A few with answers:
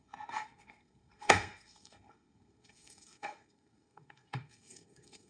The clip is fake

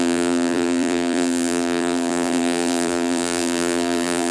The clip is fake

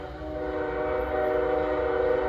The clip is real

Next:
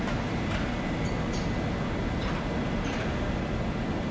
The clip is real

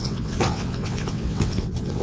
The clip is fake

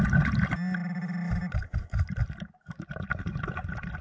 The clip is real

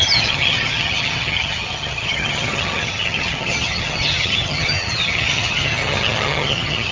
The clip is fake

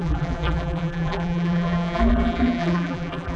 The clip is fake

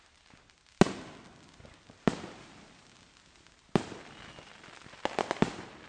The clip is real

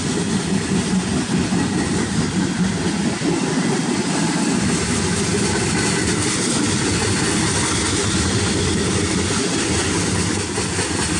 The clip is real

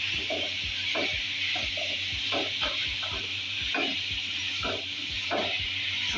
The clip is fake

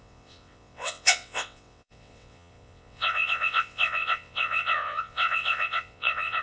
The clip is fake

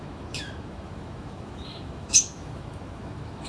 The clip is fake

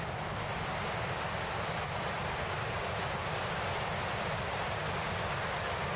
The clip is real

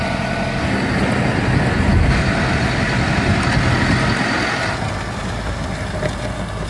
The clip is real